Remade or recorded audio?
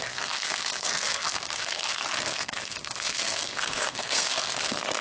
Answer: remade